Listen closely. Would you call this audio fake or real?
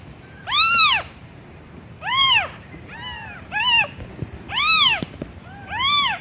fake